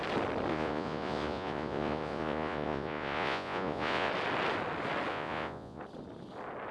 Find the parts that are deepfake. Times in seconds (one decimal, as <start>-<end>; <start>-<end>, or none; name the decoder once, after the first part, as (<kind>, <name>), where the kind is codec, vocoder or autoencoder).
0.5-4.1 (vocoder, Vocos); 5.1-5.8